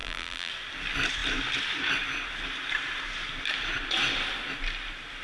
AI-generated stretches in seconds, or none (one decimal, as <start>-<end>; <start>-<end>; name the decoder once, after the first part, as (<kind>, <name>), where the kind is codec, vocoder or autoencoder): 0.0-0.5 (vocoder, BigVGAN v2)